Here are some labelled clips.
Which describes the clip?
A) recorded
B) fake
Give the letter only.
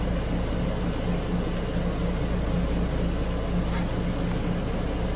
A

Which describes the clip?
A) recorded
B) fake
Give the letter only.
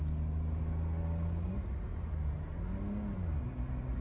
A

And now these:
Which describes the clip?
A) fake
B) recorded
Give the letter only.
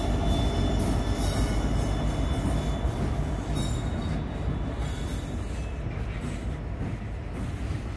B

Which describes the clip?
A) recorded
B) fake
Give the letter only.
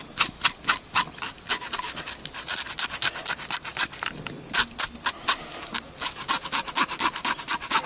A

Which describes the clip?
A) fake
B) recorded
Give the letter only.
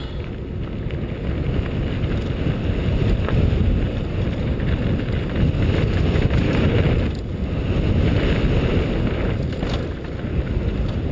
B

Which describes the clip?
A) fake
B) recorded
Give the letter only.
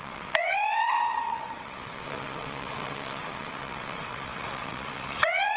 A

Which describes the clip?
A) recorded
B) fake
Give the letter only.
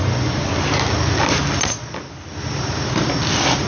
A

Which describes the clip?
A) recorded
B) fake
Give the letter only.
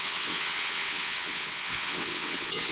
B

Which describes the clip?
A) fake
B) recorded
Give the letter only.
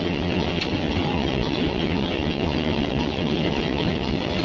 A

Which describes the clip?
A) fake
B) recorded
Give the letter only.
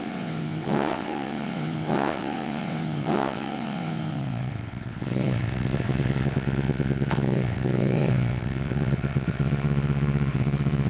A